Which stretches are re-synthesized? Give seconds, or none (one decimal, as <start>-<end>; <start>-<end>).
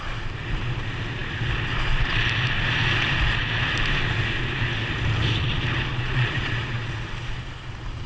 5.9-6.9